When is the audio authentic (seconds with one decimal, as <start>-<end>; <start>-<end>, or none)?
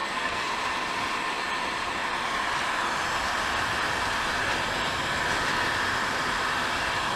0.5-7.2